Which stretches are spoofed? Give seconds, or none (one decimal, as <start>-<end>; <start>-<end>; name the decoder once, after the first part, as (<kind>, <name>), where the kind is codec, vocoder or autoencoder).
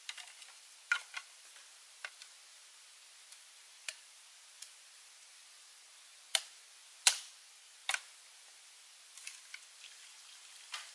none